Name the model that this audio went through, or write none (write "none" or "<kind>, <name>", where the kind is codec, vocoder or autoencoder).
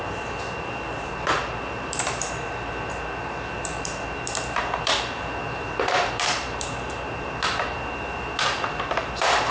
vocoder, BigVGAN v2